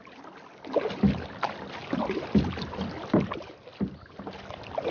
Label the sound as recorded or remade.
recorded